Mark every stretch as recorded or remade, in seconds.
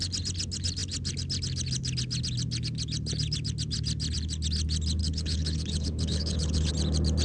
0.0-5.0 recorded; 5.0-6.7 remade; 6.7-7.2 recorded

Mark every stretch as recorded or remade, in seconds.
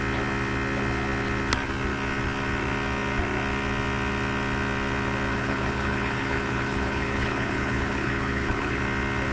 0.0-5.3 recorded; 5.3-8.8 remade; 8.8-9.3 recorded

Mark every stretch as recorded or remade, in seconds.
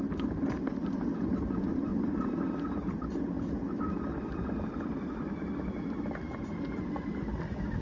0.0-7.8 recorded